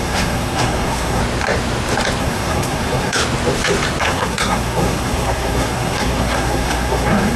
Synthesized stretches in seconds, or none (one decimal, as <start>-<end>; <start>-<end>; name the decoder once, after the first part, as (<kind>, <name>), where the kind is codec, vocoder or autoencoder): 0.0-1.2 (codec, SNAC); 2.2-3.2; 4.0-7.4